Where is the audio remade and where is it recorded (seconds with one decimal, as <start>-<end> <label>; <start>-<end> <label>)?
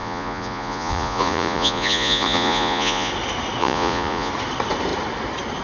0.0-3.1 remade; 3.1-3.6 recorded; 3.6-4.3 remade; 4.3-5.6 recorded